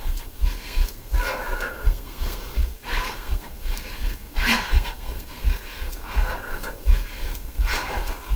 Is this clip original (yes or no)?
no